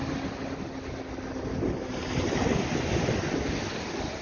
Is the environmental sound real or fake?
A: real